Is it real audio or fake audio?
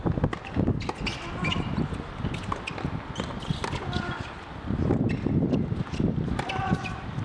real